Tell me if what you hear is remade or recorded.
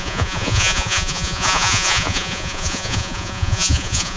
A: remade